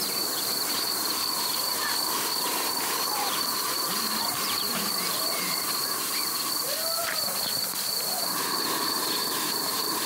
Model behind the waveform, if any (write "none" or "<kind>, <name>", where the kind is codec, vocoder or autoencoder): vocoder, BigVGAN v2